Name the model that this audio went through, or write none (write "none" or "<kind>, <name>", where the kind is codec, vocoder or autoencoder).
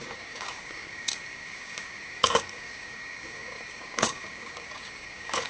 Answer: codec, DAC